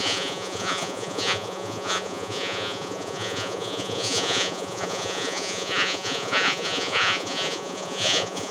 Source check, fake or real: fake